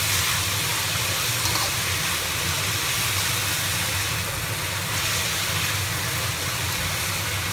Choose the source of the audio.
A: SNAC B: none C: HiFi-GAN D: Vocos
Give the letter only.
B